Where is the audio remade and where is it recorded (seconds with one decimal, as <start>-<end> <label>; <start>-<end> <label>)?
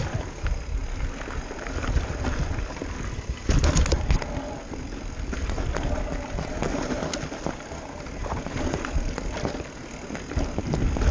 0.0-11.1 recorded